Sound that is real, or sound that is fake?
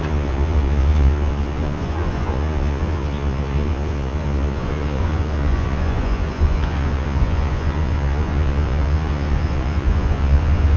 fake